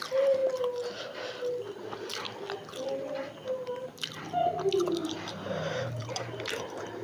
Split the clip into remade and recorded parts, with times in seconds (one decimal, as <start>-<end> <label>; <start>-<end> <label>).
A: 0.0-5.0 recorded; 5.0-5.5 remade; 5.5-6.0 recorded; 6.0-7.0 remade